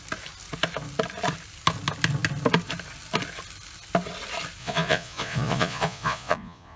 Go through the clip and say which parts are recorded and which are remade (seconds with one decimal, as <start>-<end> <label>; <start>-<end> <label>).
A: 0.0-4.6 recorded; 4.6-6.8 remade